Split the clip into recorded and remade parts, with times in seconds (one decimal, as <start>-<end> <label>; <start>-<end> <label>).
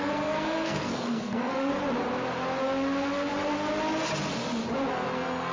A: 0.0-1.7 remade; 1.7-4.9 recorded; 4.9-5.5 remade